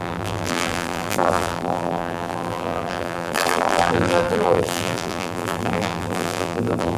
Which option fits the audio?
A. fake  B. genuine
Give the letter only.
A